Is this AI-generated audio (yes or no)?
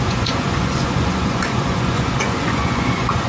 yes